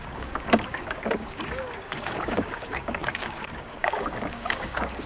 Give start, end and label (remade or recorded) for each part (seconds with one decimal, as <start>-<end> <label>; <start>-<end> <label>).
0.0-5.1 remade

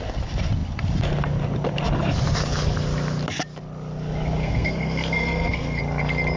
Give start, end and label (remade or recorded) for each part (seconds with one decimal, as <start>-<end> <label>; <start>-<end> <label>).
0.0-4.4 recorded; 4.4-5.8 remade; 5.8-6.4 recorded

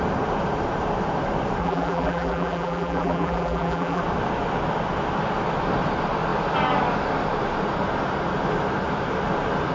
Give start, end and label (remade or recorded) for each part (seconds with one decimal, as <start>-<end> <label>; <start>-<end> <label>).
0.0-1.6 recorded; 1.6-4.0 remade; 4.0-9.7 recorded

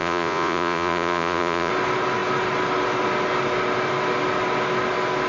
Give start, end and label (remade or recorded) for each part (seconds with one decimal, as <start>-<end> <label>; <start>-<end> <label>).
0.0-1.7 remade; 1.7-5.3 recorded

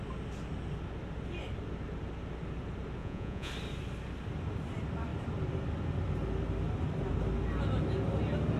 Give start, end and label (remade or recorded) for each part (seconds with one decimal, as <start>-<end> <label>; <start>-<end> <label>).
0.0-3.0 recorded; 3.0-3.5 remade; 3.5-8.6 recorded

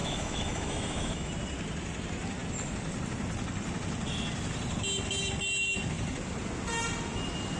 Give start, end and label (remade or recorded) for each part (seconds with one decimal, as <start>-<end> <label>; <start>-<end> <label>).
0.0-1.3 remade; 1.3-7.6 recorded